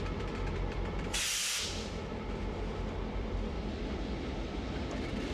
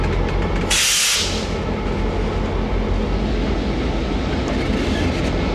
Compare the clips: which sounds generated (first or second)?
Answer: first